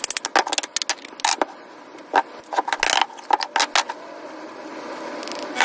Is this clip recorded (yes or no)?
yes